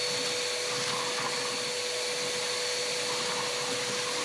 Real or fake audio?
real